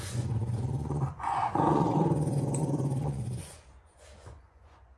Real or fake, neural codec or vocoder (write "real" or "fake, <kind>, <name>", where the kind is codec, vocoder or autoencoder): fake, vocoder, Vocos